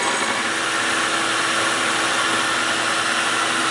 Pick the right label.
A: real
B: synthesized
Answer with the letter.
A